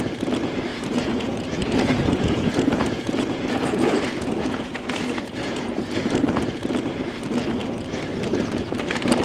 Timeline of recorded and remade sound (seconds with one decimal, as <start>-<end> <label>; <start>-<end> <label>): 0.0-0.7 recorded; 0.7-5.7 remade; 5.7-9.2 recorded